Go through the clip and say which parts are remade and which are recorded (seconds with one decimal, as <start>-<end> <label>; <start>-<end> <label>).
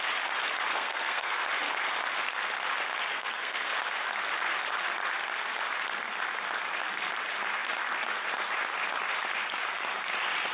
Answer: 0.0-0.7 recorded; 0.7-1.3 remade; 1.3-3.1 recorded; 3.1-3.7 remade; 3.7-10.5 recorded